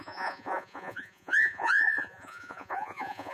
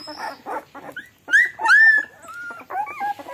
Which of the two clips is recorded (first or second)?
second